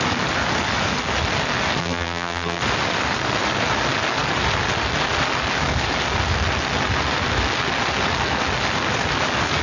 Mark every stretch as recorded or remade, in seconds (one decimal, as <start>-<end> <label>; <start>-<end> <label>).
0.0-1.8 recorded; 1.8-2.6 remade; 2.6-9.6 recorded